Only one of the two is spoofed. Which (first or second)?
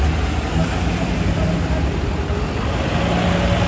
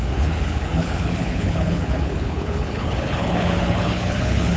second